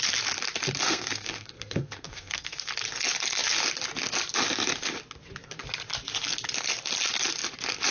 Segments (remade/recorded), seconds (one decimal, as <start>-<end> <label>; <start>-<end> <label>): 0.0-0.8 recorded; 0.8-2.7 remade; 2.7-7.9 recorded